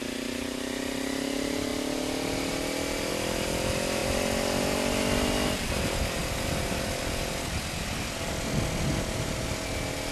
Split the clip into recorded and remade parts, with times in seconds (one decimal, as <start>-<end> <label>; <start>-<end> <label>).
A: 0.0-4.0 recorded; 4.0-8.3 remade; 8.3-10.1 recorded